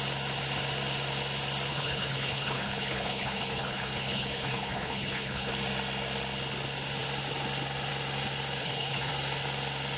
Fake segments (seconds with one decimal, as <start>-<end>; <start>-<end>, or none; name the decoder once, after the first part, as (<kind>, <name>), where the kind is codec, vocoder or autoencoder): 1.7-5.5 (codec, HILCodec); 8.6-9.1